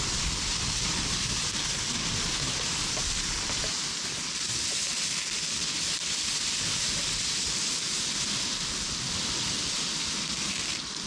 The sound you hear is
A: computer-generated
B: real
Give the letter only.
B